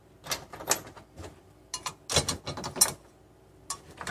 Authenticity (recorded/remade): recorded